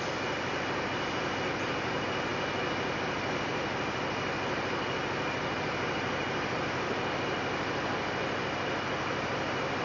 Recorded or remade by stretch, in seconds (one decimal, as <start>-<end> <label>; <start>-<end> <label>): 0.0-9.8 recorded